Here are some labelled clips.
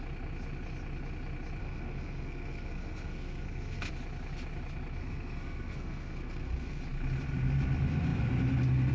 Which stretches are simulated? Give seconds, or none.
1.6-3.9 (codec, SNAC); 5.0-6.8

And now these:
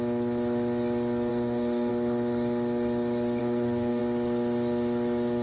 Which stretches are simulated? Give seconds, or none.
1.3-1.9 (codec, SNAC); 3.4-4.0

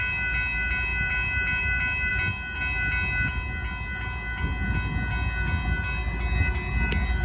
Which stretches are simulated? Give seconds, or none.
none

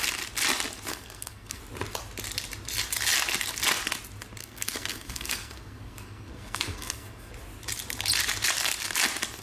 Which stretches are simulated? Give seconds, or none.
0.9-1.6 (codec, SNAC); 4.4-7.3

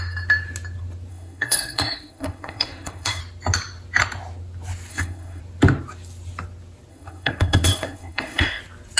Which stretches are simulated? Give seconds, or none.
1.1-3.2 (codec, SNAC); 4.9-5.4; 6.9-8.6

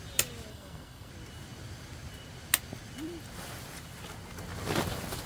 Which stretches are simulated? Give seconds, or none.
0.5-1.1 (codec, SNAC)

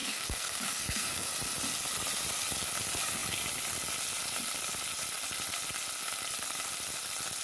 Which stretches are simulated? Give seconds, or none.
0.0-1.3 (codec, SNAC)